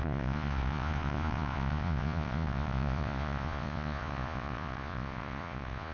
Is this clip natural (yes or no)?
no